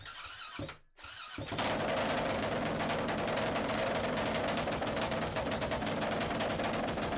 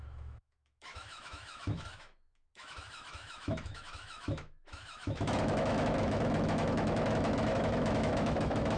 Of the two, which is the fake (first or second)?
second